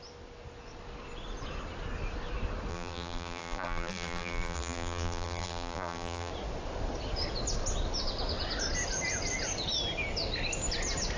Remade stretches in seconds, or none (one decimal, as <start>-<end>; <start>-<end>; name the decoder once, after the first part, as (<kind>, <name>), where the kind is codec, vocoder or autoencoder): 2.7-6.3 (vocoder, BigVGAN v2)